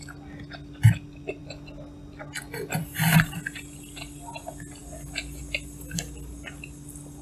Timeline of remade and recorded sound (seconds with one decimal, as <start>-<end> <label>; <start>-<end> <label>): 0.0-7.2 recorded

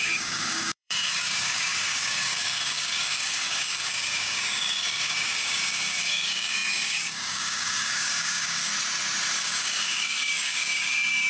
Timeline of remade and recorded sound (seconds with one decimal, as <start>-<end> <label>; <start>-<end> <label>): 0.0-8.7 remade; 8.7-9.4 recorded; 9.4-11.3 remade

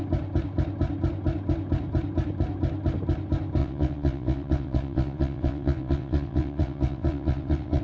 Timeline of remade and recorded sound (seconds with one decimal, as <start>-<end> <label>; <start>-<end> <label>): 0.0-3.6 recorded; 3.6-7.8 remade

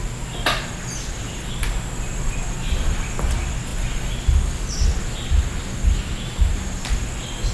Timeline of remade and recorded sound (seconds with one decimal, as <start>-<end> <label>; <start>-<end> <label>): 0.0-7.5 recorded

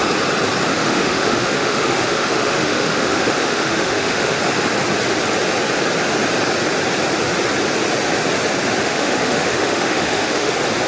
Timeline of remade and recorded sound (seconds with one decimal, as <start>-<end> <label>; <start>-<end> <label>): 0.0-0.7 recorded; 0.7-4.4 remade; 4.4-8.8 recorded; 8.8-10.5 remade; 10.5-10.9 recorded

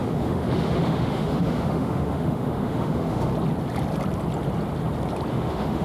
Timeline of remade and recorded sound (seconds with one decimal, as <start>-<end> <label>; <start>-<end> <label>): 0.0-3.3 remade; 3.3-5.3 recorded; 5.3-5.8 remade

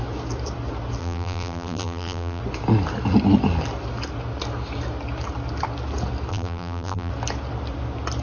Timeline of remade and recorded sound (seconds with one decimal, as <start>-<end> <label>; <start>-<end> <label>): 0.0-1.0 recorded; 1.0-2.4 remade; 2.4-6.3 recorded; 6.3-7.1 remade; 7.1-8.2 recorded